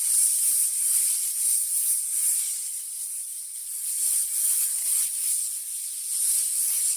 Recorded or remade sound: recorded